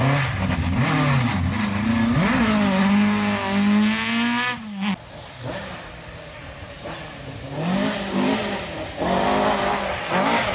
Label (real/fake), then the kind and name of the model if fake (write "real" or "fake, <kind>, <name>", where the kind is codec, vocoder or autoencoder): real